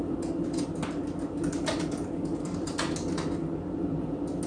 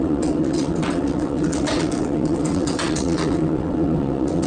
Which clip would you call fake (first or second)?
second